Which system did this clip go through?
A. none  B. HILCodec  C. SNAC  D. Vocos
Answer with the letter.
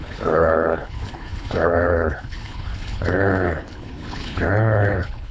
B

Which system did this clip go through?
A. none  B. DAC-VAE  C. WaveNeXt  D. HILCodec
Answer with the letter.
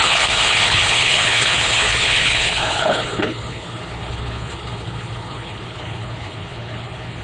D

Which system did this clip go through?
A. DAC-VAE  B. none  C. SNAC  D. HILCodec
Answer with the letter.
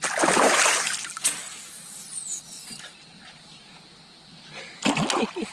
B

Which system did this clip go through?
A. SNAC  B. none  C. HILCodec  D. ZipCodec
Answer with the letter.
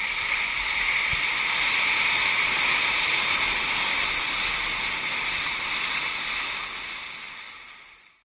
B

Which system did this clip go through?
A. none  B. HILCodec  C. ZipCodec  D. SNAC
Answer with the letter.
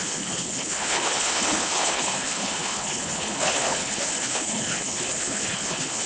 B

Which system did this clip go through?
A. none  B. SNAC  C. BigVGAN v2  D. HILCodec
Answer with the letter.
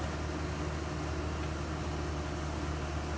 A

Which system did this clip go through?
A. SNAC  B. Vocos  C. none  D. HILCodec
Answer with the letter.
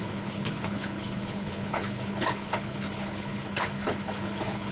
D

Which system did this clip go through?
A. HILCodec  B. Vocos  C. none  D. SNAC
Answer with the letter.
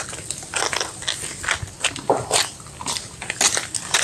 C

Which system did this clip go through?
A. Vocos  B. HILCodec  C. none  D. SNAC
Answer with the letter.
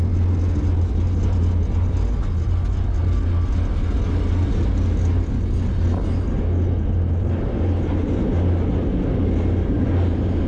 C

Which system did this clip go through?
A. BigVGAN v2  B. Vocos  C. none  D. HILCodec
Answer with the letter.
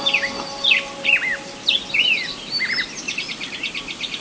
C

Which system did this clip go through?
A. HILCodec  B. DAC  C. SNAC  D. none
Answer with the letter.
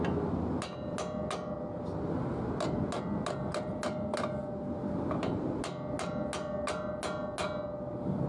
D